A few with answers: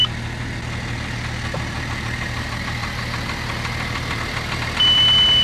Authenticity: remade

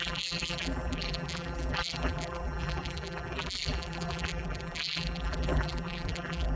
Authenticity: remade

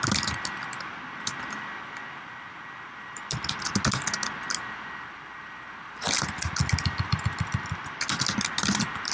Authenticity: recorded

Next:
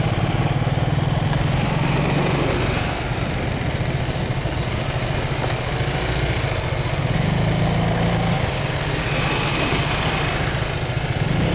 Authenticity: recorded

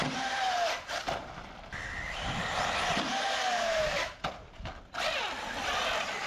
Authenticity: recorded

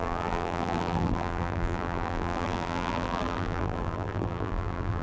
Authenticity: remade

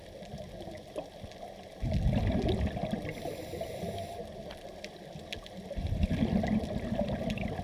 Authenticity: recorded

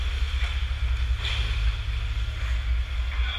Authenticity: recorded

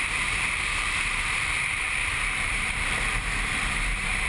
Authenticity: remade